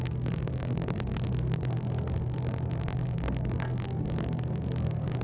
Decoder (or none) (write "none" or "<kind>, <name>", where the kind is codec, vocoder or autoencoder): codec, SNAC